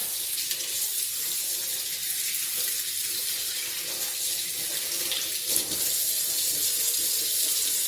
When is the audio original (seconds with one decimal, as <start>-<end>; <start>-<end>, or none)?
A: 1.6-4.3